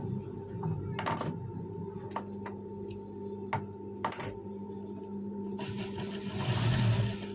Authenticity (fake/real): real